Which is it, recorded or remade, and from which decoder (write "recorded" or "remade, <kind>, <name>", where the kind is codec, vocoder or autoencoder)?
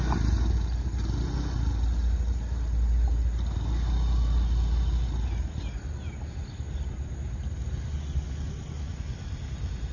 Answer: recorded